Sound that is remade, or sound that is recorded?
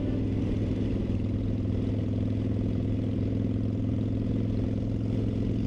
recorded